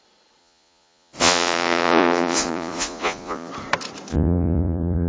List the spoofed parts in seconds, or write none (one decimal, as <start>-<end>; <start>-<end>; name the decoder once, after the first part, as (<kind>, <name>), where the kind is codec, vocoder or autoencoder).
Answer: 0.4-3.5 (vocoder, Vocos); 4.1-5.1